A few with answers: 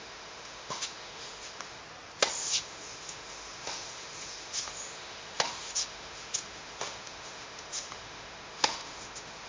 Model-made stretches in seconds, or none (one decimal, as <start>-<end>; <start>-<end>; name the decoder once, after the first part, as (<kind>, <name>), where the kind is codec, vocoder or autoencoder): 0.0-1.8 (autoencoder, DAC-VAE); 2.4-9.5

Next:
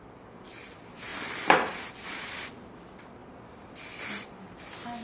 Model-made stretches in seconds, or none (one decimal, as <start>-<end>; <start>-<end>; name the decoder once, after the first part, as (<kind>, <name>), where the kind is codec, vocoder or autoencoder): none

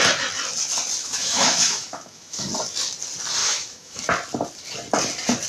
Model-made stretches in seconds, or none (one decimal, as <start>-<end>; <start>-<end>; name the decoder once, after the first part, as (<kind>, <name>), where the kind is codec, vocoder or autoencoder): 1.0-2.5 (autoencoder, DAC-VAE); 3.4-4.0

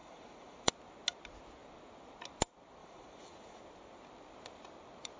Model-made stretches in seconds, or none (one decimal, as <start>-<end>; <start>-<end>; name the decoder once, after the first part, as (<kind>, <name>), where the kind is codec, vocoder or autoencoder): 0.0-0.7 (vocoder, Vocos); 2.8-3.6

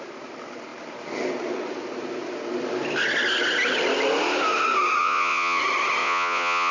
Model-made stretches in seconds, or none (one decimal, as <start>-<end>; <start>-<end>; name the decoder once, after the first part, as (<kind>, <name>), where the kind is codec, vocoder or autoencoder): 5.0-5.6 (vocoder, Vocos); 6.0-6.7

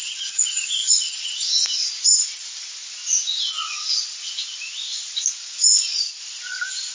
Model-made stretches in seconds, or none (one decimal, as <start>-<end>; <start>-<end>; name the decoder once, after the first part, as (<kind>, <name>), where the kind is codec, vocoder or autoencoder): 0.0-0.9 (vocoder, BigVGAN v2); 1.4-1.9